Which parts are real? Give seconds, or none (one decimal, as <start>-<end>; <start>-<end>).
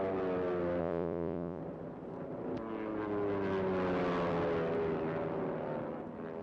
0.0-0.8; 1.6-6.4